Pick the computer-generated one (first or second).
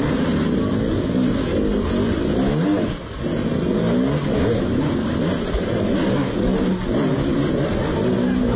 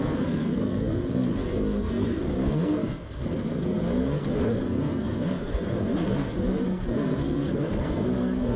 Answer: second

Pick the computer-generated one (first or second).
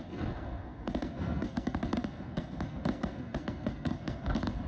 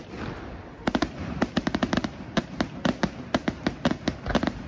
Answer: first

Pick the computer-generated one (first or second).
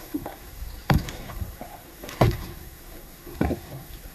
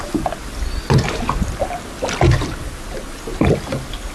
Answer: first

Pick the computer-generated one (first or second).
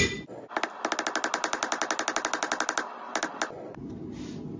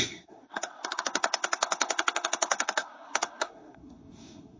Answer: second